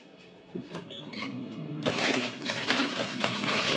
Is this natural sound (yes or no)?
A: no